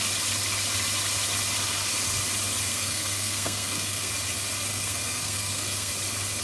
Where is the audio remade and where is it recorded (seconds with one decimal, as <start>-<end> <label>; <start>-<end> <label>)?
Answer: 0.0-2.7 recorded; 2.7-4.1 remade; 4.1-4.7 recorded; 4.7-5.9 remade; 5.9-6.4 recorded